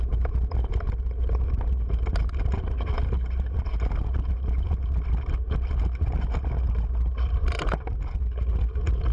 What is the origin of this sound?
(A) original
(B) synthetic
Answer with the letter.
A